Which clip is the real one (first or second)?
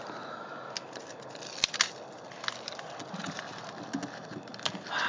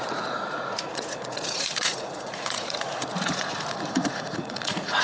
first